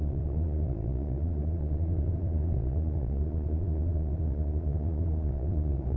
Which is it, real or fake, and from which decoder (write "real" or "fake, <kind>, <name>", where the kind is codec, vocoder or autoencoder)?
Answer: fake, vocoder, Vocos